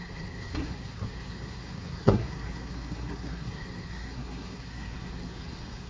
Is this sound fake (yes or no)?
yes